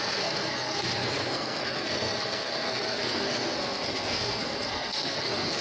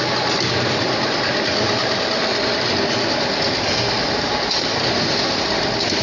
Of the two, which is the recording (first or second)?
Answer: second